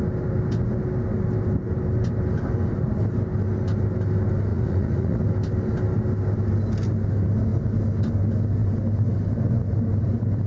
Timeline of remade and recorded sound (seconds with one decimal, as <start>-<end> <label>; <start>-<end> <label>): 0.0-4.5 recorded; 4.5-5.2 remade; 5.2-10.5 recorded